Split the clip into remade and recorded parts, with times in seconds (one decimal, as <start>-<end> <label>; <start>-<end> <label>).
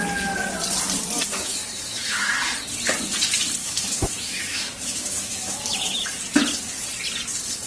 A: 0.0-1.3 recorded; 1.3-2.3 remade; 2.3-3.6 recorded; 3.6-6.2 remade; 6.2-7.7 recorded